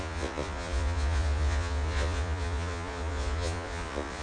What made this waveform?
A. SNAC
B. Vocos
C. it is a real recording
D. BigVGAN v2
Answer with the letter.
B